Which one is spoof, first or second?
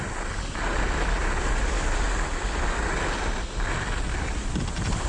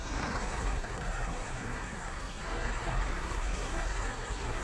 second